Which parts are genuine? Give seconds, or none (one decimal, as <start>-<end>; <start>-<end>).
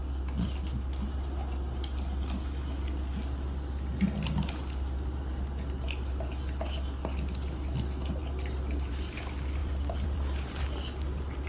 0.0-9.6; 10.6-11.5